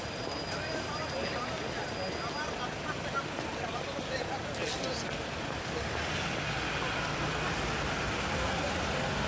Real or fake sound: real